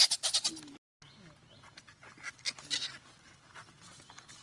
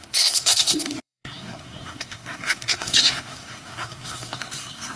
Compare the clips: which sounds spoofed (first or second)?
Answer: second